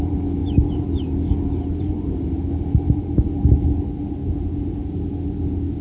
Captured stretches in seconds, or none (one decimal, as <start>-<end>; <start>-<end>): 0.0-5.8